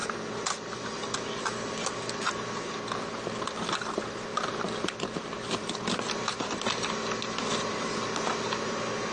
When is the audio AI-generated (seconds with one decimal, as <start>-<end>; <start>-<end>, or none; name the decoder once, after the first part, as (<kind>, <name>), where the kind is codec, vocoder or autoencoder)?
none